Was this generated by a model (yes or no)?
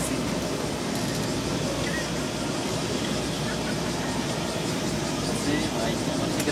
no